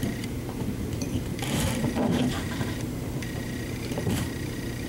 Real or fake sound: fake